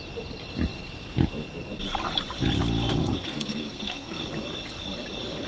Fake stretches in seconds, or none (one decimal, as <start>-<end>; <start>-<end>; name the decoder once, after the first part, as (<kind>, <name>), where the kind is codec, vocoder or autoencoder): 3.0-4.2 (codec, SNAC)